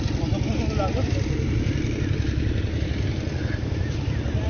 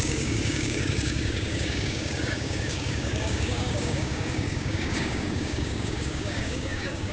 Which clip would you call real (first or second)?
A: first